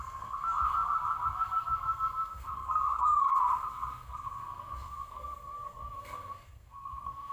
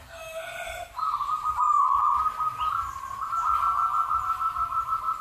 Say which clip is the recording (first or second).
second